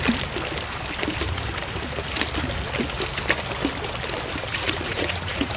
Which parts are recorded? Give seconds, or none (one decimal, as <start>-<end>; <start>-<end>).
0.0-4.5